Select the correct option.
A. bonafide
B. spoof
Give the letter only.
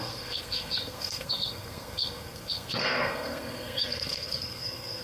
B